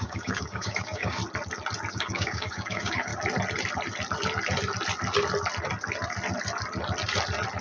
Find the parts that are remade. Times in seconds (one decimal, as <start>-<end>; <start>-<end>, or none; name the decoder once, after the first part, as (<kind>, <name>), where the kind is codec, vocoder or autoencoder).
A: 0.0-1.2 (codec, DAC); 1.9-3.1